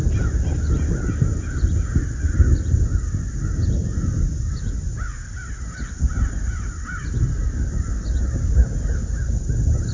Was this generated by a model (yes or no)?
no